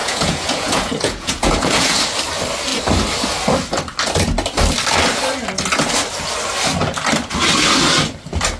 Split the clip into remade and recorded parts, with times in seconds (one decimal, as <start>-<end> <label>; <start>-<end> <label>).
0.0-2.0 remade; 2.0-8.6 recorded